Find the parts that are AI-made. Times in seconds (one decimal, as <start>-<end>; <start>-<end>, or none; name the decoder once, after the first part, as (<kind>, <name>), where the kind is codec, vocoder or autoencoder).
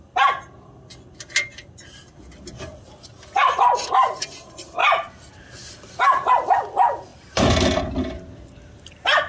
4.8-6.3 (vocoder, BigVGAN v2); 7.1-7.8